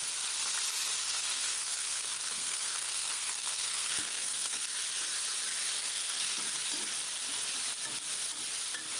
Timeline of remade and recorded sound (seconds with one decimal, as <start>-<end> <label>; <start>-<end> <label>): 0.0-1.0 recorded; 1.0-4.8 remade; 4.8-5.9 recorded; 5.9-6.4 remade; 6.4-9.0 recorded